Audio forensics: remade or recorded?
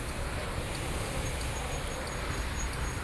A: recorded